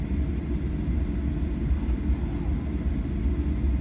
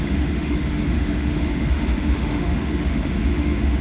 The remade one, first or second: second